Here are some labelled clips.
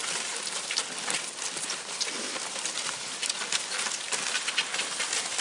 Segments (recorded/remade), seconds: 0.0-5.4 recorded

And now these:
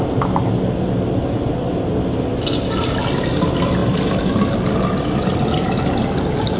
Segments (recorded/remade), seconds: 0.0-6.6 recorded

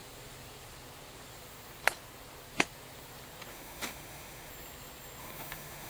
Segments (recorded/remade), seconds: 0.0-3.5 recorded; 3.5-4.5 remade; 4.5-5.2 recorded; 5.2-5.9 remade

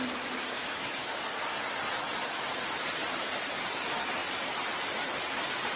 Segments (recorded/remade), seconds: 0.0-0.6 recorded; 0.6-1.2 remade; 1.2-5.8 recorded

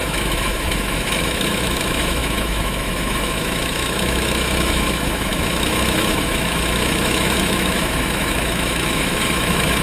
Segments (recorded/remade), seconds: 0.0-9.8 remade

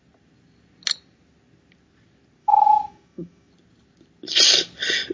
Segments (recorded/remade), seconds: 0.0-2.4 recorded; 2.4-3.5 remade; 3.5-5.1 recorded

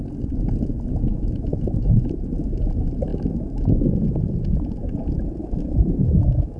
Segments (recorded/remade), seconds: 0.0-1.1 recorded; 1.1-2.2 remade; 2.2-3.1 recorded; 3.1-3.8 remade; 3.8-5.4 recorded; 5.4-6.6 remade

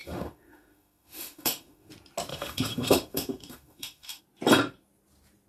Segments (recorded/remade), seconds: 0.0-1.9 remade; 1.9-2.3 recorded; 2.3-4.2 remade; 4.2-5.5 recorded